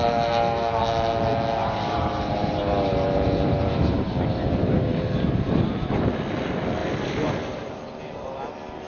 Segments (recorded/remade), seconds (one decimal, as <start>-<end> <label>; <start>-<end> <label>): 0.0-1.6 recorded; 1.6-6.1 remade; 6.1-6.8 recorded; 6.8-7.7 remade; 7.7-8.9 recorded